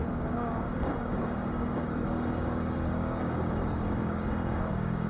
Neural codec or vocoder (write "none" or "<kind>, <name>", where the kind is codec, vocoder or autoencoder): codec, DAC